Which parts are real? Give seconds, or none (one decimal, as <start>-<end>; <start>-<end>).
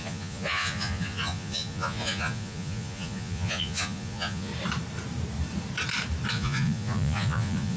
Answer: 4.5-6.3